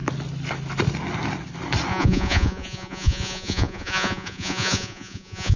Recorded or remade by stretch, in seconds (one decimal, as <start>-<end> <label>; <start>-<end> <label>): 0.0-1.9 recorded; 1.9-5.6 remade